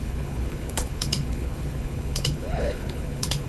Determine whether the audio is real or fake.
fake